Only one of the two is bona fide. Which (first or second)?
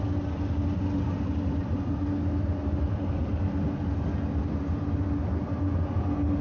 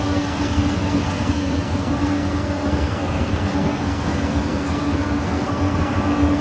first